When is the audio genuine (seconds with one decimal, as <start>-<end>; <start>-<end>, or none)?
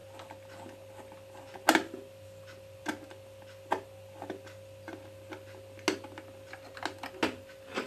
0.0-7.9